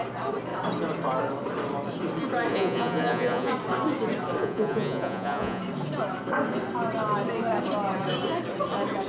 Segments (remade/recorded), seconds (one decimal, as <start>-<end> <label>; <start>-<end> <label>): 0.0-2.5 recorded; 2.5-3.5 remade; 3.5-4.4 recorded; 4.4-5.6 remade; 5.6-9.1 recorded